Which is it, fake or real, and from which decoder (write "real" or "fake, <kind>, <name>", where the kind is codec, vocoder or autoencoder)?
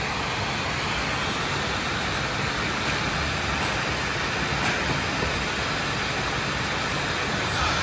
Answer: real